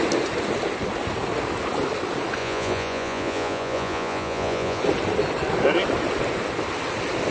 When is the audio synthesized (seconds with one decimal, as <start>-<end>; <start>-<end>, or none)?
2.4-4.8